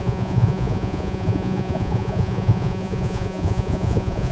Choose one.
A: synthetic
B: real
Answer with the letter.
A